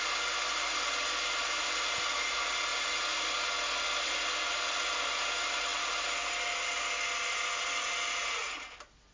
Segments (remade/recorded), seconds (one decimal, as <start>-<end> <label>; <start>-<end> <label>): 0.0-9.1 recorded